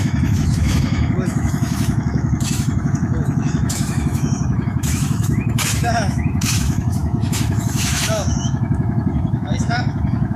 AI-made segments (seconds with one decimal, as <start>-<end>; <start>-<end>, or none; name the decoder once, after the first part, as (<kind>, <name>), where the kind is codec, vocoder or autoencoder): 0.0-10.4 (autoencoder, DAC-VAE)